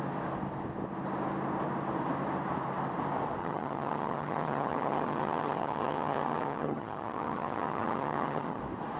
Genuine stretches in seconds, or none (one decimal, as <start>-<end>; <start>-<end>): 0.0-3.4; 8.6-9.0